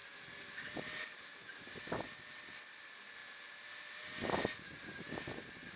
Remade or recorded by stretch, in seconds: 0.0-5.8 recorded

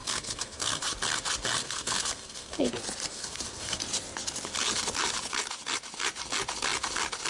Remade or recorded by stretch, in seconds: 0.0-0.8 remade; 0.8-1.6 recorded; 1.6-2.7 remade; 2.7-3.1 recorded; 3.1-3.8 remade; 3.8-7.3 recorded

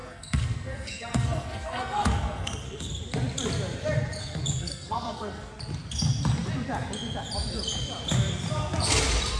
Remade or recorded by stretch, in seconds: 0.0-2.9 remade; 2.9-4.2 recorded; 4.2-5.5 remade; 5.5-9.4 recorded

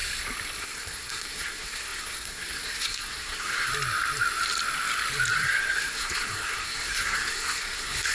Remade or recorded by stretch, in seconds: 0.0-0.6 recorded; 0.6-3.7 remade; 3.7-5.3 recorded; 5.3-8.1 remade

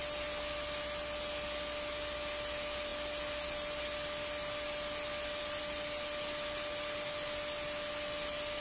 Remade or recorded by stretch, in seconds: 0.0-8.6 recorded

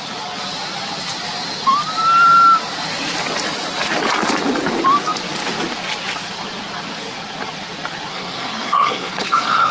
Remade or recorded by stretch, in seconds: 0.0-8.1 recorded; 8.1-9.7 remade